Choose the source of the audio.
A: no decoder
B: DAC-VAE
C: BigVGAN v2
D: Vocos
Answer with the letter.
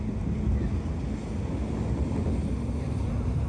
A